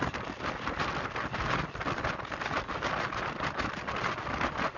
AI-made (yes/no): no